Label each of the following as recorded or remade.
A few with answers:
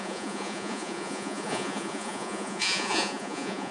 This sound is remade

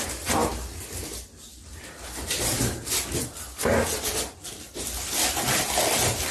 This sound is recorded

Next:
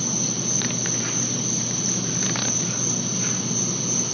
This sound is recorded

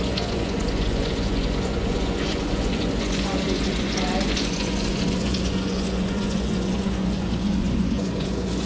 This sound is remade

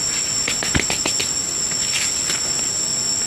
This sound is recorded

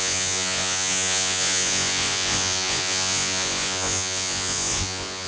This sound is remade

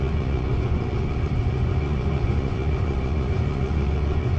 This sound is remade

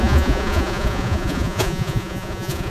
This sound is remade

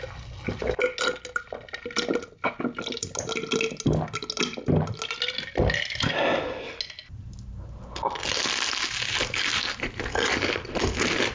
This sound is recorded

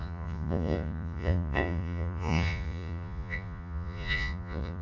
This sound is remade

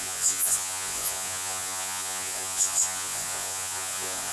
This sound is remade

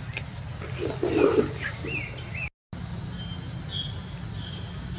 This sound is recorded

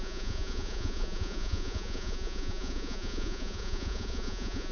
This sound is remade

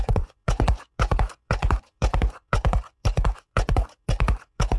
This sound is remade